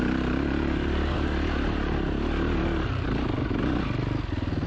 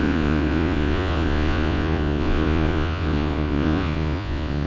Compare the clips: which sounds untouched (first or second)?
first